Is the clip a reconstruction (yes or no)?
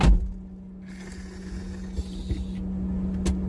no